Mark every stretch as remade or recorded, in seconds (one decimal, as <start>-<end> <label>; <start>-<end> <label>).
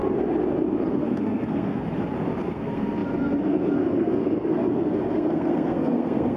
0.0-0.9 recorded; 0.9-1.8 remade; 1.8-2.4 recorded; 2.4-6.4 remade